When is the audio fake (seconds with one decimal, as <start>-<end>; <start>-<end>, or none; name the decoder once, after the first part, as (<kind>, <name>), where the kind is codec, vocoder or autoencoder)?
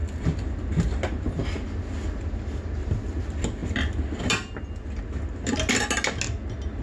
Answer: none